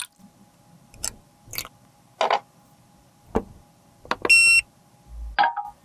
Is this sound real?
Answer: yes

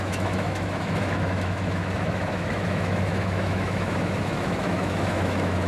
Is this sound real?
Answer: no